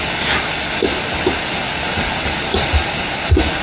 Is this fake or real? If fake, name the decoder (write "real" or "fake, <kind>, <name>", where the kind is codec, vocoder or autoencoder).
real